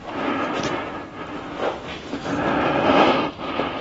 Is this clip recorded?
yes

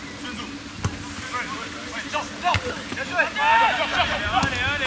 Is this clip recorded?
yes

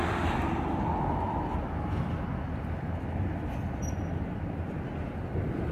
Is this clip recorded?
yes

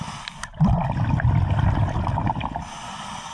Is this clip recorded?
yes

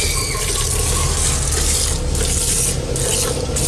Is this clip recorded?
yes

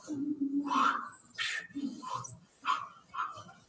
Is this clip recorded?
yes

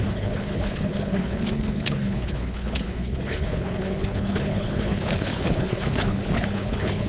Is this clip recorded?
no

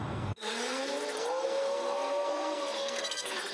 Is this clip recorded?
no